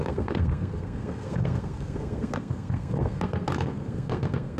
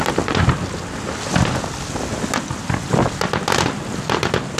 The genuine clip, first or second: second